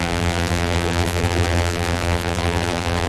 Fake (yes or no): yes